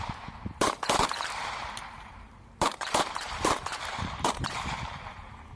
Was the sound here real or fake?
fake